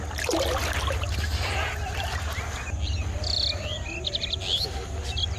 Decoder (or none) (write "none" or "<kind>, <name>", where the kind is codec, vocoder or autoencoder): none